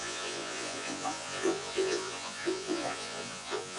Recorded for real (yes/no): no